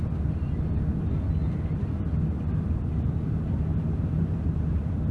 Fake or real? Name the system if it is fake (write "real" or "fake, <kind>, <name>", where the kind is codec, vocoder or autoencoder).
real